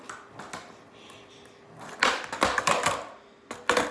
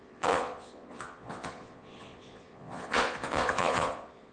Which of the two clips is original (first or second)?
first